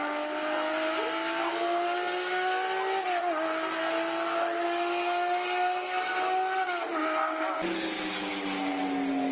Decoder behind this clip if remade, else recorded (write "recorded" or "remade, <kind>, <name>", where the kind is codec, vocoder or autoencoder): recorded